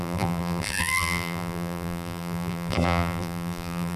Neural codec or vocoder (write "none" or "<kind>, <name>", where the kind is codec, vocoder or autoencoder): vocoder, BigVGAN v2